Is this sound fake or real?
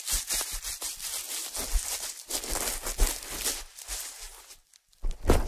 real